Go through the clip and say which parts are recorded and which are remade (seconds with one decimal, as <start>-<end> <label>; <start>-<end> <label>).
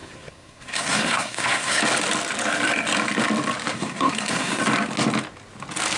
0.0-1.8 remade; 1.8-3.7 recorded; 3.7-4.6 remade; 4.6-6.0 recorded